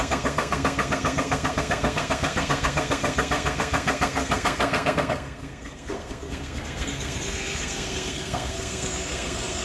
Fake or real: fake